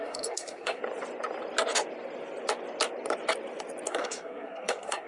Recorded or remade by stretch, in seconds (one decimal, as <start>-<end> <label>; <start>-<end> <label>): 0.0-0.8 remade; 0.8-3.9 recorded; 3.9-5.1 remade